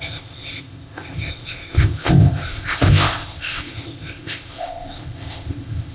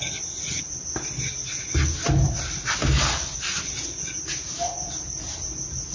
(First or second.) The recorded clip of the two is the second